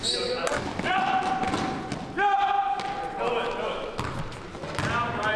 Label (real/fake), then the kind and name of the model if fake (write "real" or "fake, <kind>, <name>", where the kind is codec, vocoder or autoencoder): real